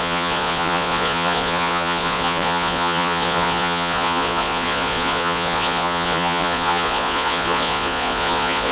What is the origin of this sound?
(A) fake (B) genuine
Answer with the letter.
A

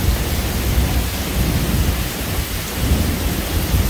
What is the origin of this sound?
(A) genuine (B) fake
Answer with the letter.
A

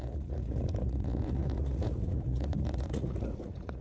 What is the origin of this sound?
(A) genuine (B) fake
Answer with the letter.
B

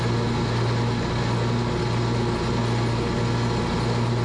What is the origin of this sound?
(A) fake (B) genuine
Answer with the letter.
B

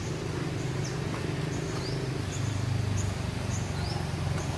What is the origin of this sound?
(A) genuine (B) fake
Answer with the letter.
A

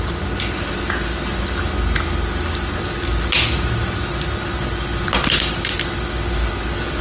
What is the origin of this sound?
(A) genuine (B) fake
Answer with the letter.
A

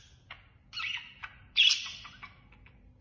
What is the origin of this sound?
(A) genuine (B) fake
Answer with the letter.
A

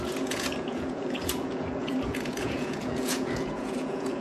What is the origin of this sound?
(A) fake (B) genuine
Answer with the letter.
A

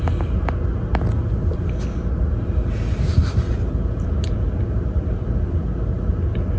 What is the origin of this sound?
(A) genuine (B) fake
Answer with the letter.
A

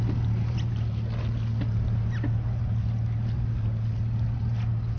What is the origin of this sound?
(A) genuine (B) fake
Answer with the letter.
A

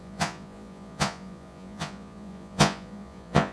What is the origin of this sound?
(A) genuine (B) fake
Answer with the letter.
B